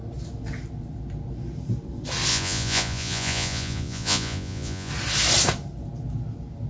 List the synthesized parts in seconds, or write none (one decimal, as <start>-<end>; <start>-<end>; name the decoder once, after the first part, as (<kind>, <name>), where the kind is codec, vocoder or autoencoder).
2.3-4.9 (vocoder, Vocos)